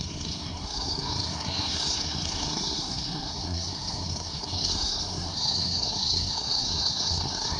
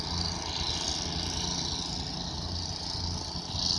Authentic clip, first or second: second